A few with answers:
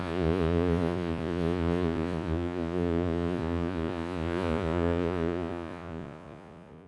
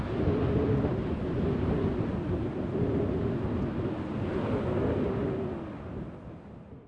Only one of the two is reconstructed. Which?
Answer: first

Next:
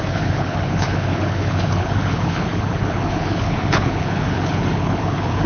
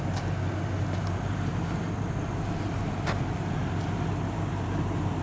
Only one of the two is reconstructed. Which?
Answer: first